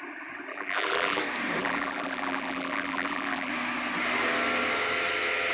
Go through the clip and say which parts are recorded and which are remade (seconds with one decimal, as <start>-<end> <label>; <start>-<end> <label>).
0.0-0.5 recorded; 0.5-1.2 remade; 1.2-1.6 recorded; 1.6-3.5 remade; 3.5-5.5 recorded